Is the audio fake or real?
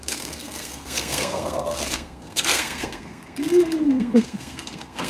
fake